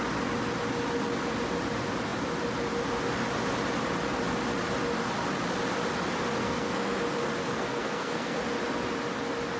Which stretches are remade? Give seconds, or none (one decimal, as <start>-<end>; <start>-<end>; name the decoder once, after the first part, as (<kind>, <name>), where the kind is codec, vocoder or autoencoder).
6.4-7.0 (codec, SNAC); 7.4-8.4